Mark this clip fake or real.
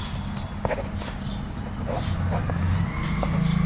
real